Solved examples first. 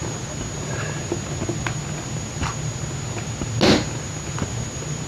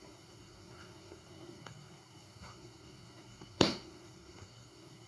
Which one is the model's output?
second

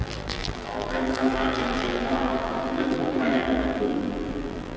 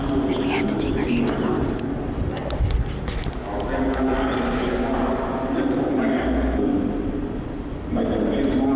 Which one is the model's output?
first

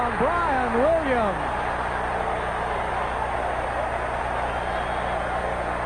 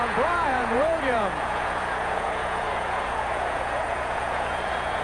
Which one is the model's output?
second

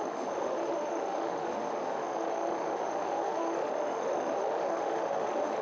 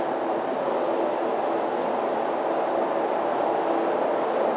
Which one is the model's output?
first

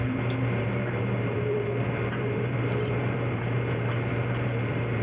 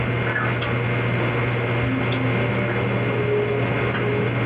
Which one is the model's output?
first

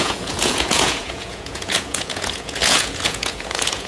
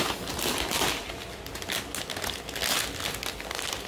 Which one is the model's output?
first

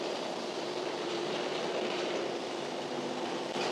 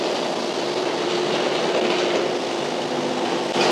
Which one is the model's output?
first